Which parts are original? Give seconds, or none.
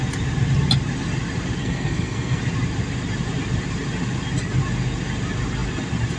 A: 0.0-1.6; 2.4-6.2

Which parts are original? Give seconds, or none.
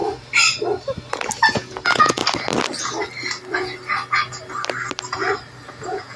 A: 0.0-1.5; 2.2-5.7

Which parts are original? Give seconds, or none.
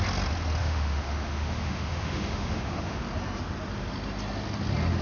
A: 0.0-0.6; 3.0-5.0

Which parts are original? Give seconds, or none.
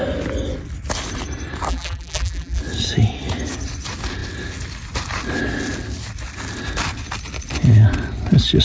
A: 0.0-1.7; 2.6-8.6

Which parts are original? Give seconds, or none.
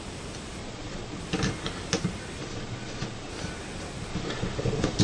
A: 0.0-0.6; 1.2-2.4; 3.3-4.1